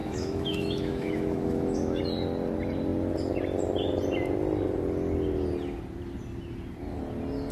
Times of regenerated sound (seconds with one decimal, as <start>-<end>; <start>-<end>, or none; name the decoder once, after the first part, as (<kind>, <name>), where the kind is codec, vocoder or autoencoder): 0.0-2.0 (autoencoder, DAC-VAE)